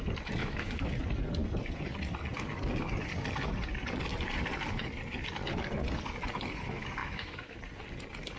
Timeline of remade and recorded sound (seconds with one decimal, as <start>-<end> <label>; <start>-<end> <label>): 0.0-0.4 recorded; 0.4-0.9 remade; 0.9-7.0 recorded; 7.0-7.6 remade; 7.6-8.4 recorded